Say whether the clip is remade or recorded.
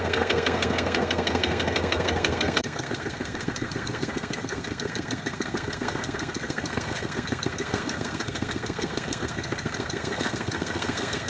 remade